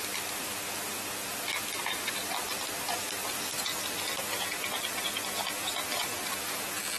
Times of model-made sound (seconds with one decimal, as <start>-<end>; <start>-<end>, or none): 6.1-6.6